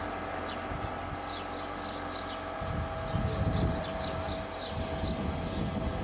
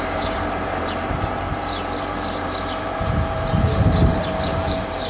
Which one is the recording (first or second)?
first